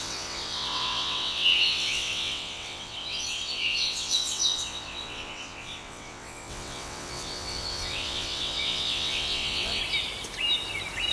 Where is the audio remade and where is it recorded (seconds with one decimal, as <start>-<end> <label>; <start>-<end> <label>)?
0.0-9.8 remade; 9.8-11.1 recorded